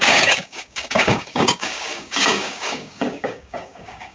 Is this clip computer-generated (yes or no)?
yes